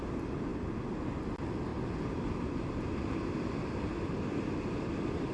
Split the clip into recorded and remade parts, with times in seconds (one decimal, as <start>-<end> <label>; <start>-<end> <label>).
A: 0.0-5.3 recorded